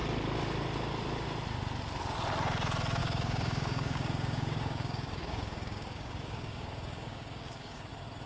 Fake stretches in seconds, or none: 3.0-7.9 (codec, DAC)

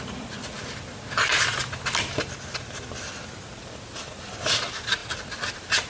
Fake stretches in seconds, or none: none

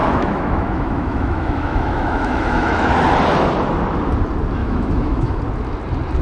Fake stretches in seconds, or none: 0.0-2.9 (autoencoder, DAC-VAE); 4.6-5.4